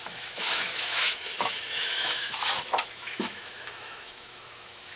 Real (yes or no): no